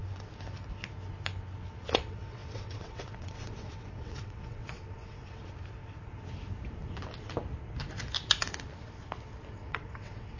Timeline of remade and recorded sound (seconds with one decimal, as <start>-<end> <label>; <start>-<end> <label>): 0.0-1.8 recorded; 1.8-5.4 remade; 5.4-9.6 recorded; 9.6-10.4 remade